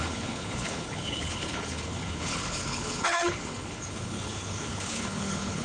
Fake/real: fake